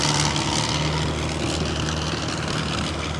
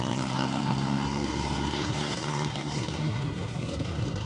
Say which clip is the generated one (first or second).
second